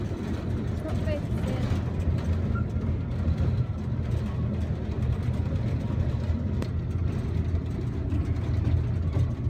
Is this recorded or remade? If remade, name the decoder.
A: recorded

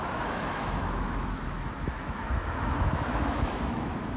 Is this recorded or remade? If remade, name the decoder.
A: remade, autoencoder, DAC-VAE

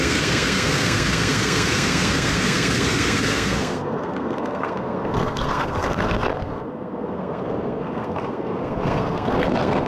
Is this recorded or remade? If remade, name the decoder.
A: remade, codec, SNAC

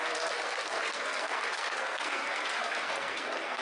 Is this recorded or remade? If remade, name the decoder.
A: remade, codec, SNAC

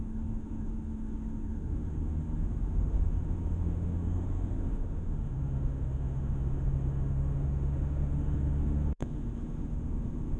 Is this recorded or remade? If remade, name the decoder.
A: remade, autoencoder, DAC-VAE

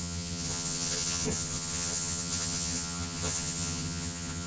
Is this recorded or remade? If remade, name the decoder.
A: remade, vocoder, HiFi-GAN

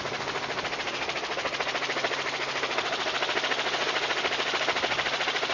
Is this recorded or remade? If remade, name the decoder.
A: recorded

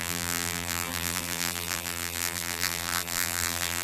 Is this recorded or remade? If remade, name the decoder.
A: remade, vocoder, BigVGAN v2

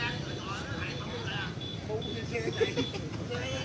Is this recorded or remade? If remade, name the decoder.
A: recorded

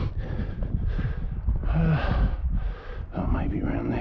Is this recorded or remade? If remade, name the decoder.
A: recorded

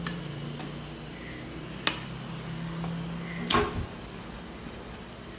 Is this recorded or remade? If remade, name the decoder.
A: recorded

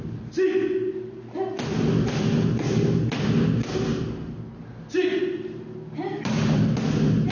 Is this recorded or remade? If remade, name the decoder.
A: recorded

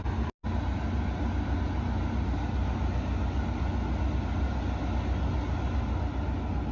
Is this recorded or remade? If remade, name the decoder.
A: recorded